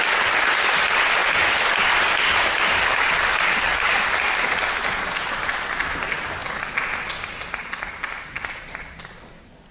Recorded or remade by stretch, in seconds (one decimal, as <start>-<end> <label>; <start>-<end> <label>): 0.0-9.7 recorded